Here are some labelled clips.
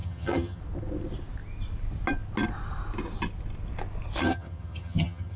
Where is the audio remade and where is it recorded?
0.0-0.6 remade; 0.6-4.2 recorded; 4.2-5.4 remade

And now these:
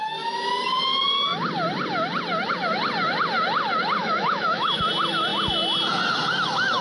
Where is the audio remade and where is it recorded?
0.0-4.0 recorded; 4.0-4.8 remade; 4.8-6.8 recorded

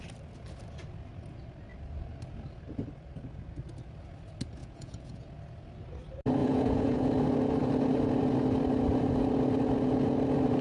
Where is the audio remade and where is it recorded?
0.0-4.6 recorded; 4.6-5.3 remade; 5.3-6.4 recorded; 6.4-7.1 remade; 7.1-10.6 recorded

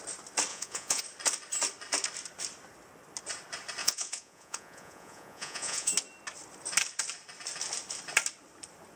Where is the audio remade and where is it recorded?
0.0-0.5 recorded; 0.5-1.0 remade; 1.0-3.8 recorded; 3.8-5.9 remade; 5.9-9.0 recorded